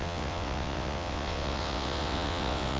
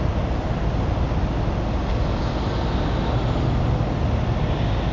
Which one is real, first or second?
second